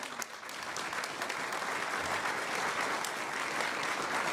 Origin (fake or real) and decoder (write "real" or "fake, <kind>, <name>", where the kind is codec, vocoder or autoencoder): real